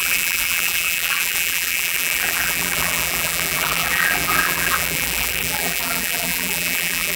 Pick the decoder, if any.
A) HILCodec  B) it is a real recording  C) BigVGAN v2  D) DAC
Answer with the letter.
C